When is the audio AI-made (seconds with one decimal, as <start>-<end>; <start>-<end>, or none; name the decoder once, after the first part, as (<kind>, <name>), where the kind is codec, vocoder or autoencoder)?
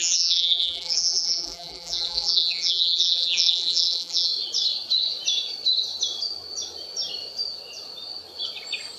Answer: 0.0-4.3 (vocoder, BigVGAN v2)